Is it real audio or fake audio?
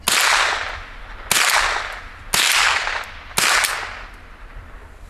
real